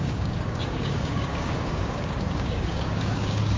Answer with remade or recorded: remade